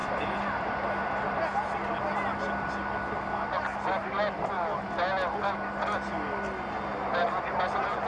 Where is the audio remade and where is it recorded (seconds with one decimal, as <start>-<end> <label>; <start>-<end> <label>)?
0.0-8.1 recorded